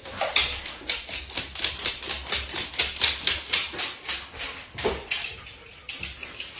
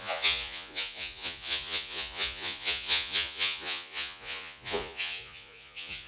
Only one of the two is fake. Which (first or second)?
second